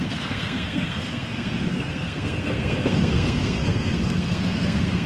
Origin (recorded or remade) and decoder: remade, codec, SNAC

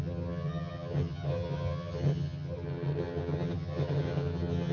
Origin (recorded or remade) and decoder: remade, vocoder, HiFi-GAN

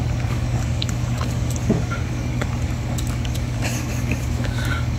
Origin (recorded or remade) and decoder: remade, codec, DAC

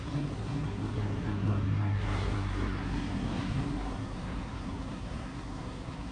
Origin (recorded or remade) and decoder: remade, codec, SNAC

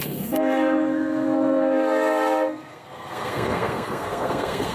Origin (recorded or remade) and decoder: remade, codec, SNAC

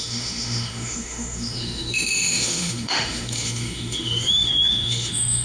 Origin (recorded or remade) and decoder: remade, autoencoder, DAC-VAE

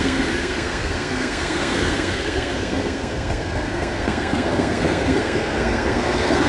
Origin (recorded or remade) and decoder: remade, codec, SNAC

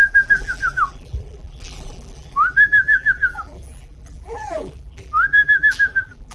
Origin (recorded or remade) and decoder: remade, vocoder, BigVGAN v2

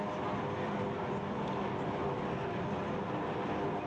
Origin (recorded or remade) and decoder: recorded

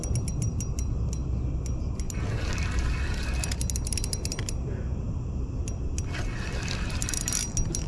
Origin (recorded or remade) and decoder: recorded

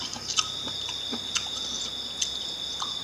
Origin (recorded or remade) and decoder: recorded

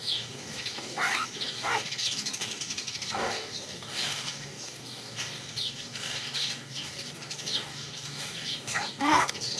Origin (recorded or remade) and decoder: remade, codec, DAC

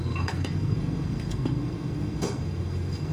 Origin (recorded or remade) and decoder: remade, codec, SNAC